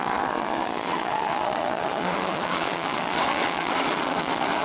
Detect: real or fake fake